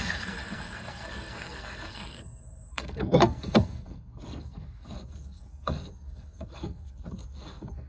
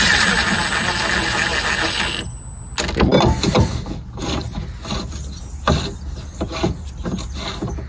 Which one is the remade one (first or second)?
first